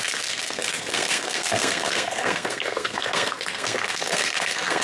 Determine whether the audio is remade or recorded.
remade